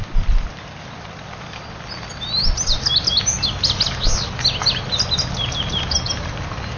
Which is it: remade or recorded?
recorded